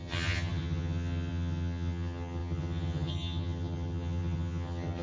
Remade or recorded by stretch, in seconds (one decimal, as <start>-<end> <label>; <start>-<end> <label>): 0.0-5.0 remade